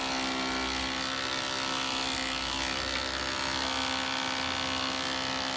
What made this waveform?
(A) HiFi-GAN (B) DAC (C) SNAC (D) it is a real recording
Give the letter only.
D